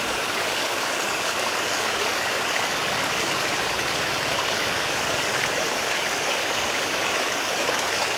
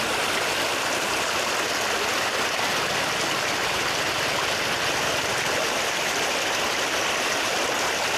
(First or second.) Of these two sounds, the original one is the second